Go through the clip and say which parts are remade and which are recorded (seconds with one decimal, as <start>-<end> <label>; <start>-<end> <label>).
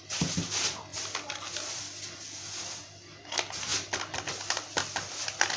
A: 0.0-5.6 recorded